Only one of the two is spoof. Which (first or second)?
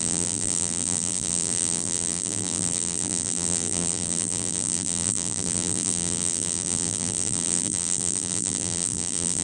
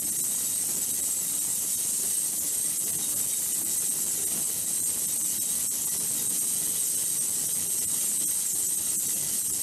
first